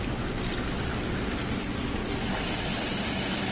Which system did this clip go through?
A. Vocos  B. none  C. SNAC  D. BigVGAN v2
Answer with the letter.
B